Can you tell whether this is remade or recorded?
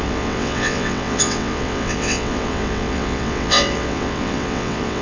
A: remade